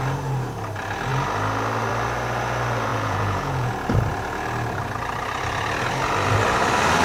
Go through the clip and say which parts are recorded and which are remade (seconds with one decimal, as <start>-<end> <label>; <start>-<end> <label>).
0.0-2.9 recorded; 2.9-3.7 remade; 3.7-7.0 recorded